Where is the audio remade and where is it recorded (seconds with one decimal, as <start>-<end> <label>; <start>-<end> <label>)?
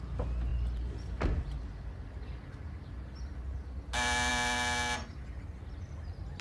0.0-6.4 recorded